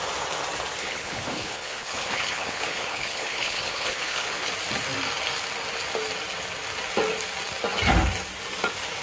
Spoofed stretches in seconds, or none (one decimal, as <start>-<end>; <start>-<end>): 0.8-4.5